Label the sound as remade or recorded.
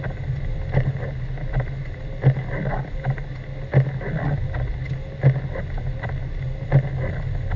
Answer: recorded